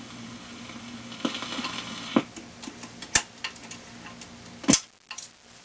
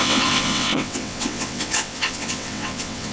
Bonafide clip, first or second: first